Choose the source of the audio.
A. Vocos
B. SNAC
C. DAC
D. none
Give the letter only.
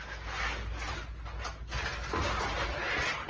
D